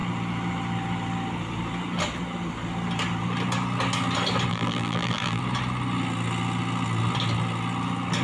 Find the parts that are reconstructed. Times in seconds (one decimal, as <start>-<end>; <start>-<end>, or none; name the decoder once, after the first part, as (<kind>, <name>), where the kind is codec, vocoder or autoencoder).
4.5-5.4 (vocoder, BigVGAN v2)